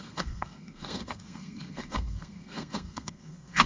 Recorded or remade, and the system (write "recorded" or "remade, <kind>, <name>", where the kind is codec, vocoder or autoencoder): remade, codec, SNAC